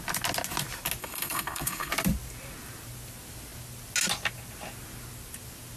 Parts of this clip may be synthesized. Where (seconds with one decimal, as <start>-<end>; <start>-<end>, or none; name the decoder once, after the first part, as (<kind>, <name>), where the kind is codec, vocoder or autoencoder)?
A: 1.0-1.9 (codec, SNAC)